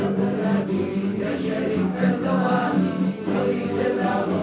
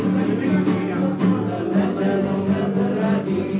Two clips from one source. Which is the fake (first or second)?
first